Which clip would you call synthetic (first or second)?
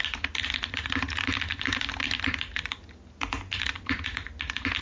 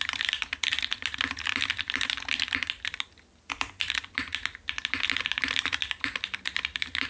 second